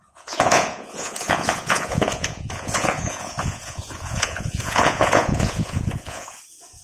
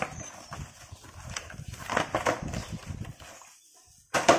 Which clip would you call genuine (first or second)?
second